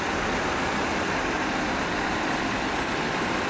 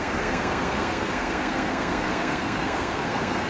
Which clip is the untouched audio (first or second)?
first